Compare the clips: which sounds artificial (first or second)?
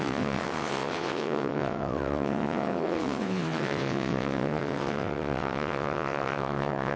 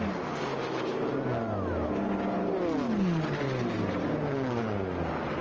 first